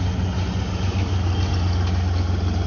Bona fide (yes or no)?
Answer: yes